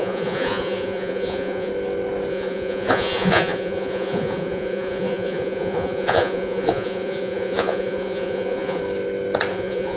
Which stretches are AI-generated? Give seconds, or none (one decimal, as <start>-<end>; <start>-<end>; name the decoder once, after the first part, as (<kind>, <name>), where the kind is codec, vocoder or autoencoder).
0.0-1.7 (vocoder, Vocos); 2.3-8.8; 9.5-10.0